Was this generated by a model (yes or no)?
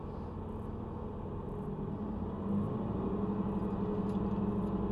no